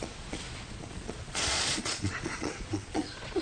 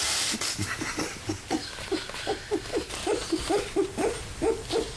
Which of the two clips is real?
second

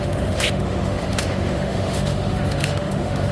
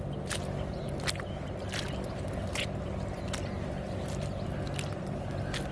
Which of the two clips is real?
second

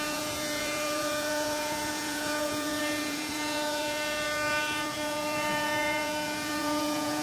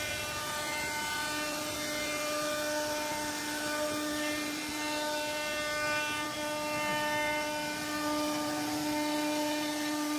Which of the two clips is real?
second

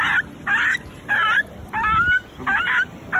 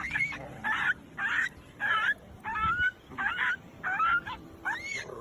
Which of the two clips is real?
first